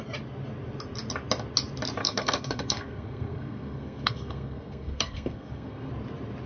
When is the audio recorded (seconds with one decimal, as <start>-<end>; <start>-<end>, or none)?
0.0-2.0; 5.9-6.5